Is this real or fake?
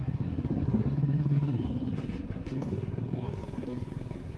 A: fake